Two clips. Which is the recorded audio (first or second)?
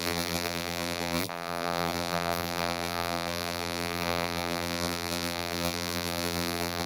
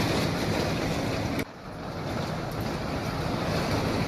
second